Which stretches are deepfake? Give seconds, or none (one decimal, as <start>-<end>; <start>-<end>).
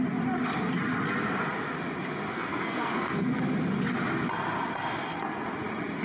2.3-3.4